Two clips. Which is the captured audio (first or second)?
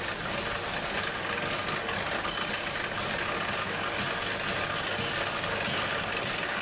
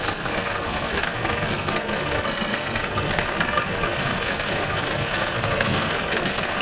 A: first